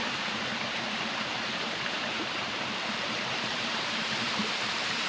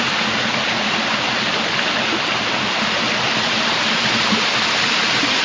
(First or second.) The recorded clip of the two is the second